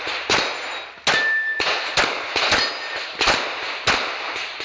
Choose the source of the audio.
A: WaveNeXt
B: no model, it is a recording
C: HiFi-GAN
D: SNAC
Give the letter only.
B